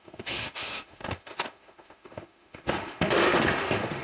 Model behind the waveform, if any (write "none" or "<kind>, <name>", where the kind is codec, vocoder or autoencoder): autoencoder, DAC-VAE